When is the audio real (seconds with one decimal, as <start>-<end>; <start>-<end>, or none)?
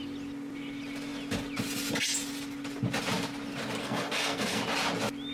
0.0-3.8; 4.6-5.3